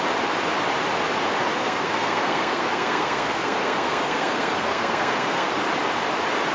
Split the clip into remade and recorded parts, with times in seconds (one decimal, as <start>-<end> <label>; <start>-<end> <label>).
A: 0.0-1.6 recorded; 1.6-5.5 remade; 5.5-6.5 recorded